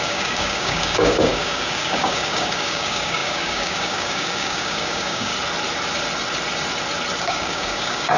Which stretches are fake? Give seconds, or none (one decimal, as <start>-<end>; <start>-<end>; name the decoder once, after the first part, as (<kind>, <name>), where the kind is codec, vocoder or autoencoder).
0.0-5.3 (codec, DAC); 7.2-8.2